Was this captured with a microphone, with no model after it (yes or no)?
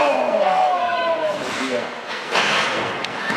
no